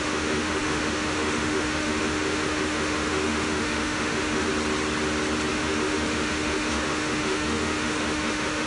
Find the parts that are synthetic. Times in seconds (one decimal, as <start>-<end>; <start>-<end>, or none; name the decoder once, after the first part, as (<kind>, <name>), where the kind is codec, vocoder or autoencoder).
0.0-4.5 (autoencoder, DAC-VAE); 5.5-8.7